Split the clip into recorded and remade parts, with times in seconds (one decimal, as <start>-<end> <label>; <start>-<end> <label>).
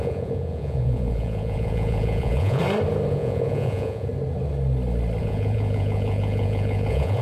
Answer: 0.0-2.6 remade; 2.6-3.1 recorded; 3.1-4.1 remade; 4.1-5.2 recorded; 5.2-7.2 remade